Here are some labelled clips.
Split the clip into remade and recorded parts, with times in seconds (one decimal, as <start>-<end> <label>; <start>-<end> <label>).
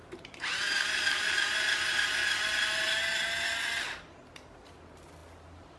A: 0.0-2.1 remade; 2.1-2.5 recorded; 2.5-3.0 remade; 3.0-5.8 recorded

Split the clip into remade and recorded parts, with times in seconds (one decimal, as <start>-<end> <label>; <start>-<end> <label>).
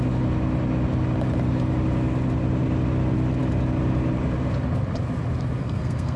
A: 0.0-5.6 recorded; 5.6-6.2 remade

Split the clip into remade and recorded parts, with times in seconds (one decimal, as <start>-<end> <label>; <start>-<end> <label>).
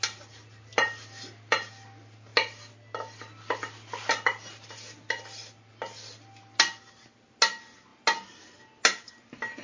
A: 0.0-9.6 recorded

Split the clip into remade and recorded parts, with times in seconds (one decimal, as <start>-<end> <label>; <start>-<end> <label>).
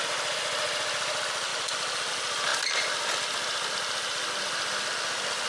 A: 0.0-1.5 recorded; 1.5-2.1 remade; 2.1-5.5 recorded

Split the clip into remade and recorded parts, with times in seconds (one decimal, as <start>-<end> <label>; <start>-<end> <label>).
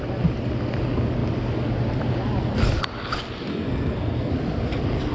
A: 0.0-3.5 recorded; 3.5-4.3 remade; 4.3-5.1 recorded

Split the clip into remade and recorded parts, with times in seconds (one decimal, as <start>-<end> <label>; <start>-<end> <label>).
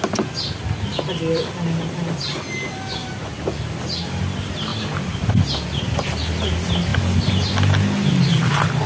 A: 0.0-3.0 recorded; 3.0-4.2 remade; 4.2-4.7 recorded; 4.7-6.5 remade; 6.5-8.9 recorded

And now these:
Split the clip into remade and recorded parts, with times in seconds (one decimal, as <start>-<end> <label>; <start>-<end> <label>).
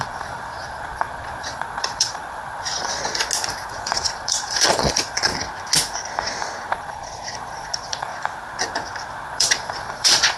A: 0.0-3.1 remade; 3.1-3.7 recorded; 3.7-5.3 remade; 5.3-6.7 recorded; 6.7-8.1 remade; 8.1-9.3 recorded; 9.3-10.4 remade